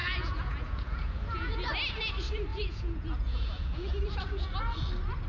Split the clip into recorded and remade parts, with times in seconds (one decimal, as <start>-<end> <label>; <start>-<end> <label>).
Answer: 0.0-1.7 remade; 1.7-2.5 recorded; 2.5-3.9 remade; 3.9-5.3 recorded